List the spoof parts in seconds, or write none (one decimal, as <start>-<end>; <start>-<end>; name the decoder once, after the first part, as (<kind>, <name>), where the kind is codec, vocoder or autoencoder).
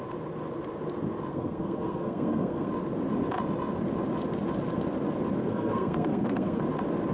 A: 1.3-2.7 (codec, SNAC); 5.4-6.6